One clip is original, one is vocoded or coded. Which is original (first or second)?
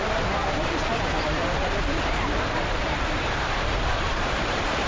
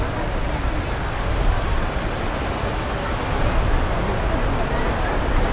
second